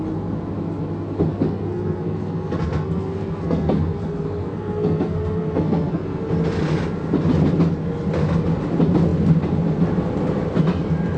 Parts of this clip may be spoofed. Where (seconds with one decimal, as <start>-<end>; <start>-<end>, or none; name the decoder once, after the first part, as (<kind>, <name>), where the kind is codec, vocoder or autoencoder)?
1.3-6.2 (codec, SNAC)